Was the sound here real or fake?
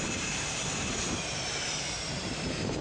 fake